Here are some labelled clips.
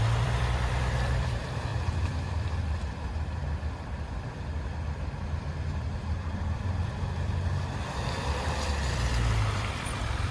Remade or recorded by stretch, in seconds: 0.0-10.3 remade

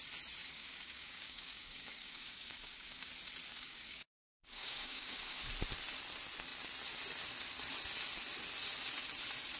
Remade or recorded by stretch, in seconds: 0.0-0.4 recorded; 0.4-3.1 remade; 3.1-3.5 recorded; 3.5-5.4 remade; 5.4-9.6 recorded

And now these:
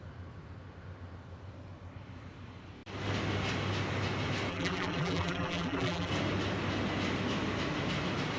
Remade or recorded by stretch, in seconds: 0.0-4.5 recorded; 4.5-6.1 remade; 6.1-8.4 recorded

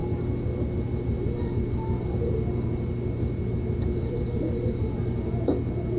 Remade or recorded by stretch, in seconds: 0.0-6.0 recorded

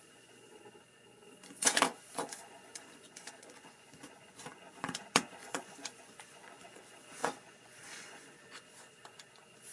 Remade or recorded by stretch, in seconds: 0.0-9.7 remade